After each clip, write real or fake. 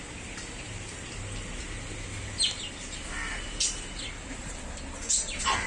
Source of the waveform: real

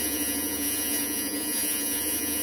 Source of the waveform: fake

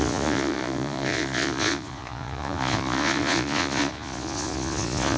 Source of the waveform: fake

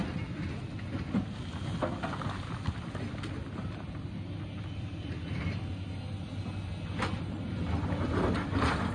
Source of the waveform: real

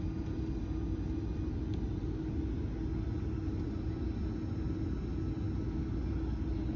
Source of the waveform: real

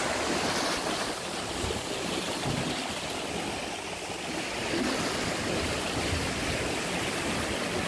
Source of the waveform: real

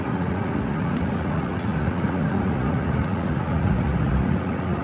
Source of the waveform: fake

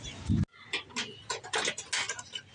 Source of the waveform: real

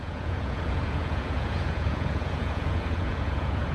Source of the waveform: fake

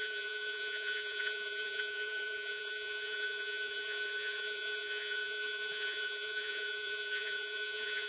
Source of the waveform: fake